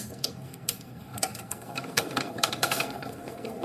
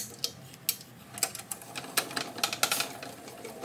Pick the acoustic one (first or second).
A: second